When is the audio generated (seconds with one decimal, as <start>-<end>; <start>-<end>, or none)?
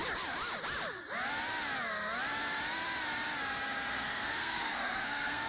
3.8-5.5